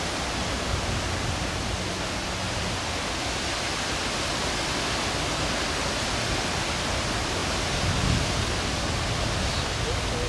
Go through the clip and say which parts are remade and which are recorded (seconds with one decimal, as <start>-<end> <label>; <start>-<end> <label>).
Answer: 0.0-10.3 recorded